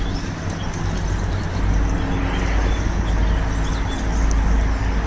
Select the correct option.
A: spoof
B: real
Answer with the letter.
B